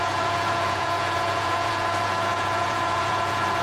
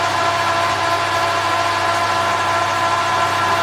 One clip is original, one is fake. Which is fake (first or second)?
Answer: first